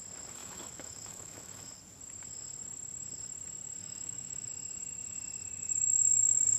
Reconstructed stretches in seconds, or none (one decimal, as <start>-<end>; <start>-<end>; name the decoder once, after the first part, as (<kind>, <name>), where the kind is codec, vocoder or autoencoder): 0.4-1.7 (autoencoder, DAC-VAE); 3.8-4.5